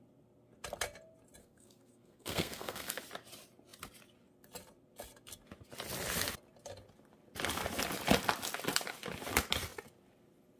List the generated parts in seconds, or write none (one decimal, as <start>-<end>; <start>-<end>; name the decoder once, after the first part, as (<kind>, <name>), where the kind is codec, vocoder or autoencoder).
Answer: 1.4-3.0 (codec, SNAC)